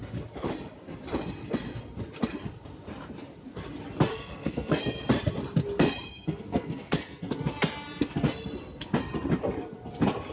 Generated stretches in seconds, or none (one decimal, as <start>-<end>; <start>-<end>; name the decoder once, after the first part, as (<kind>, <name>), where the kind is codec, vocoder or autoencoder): 4.1-4.8 (codec, SNAC); 6.1-7.3